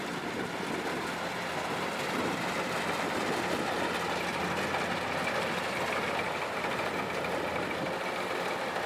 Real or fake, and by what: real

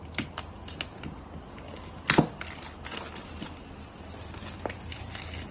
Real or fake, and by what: real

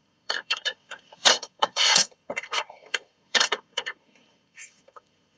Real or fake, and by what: fake, codec, SNAC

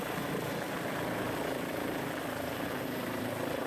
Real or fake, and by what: fake, vocoder, BigVGAN v2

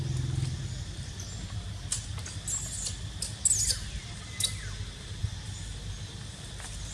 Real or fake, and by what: real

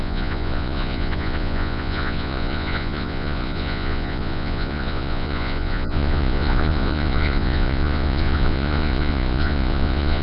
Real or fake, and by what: fake, vocoder, Vocos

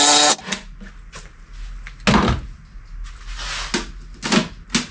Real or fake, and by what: real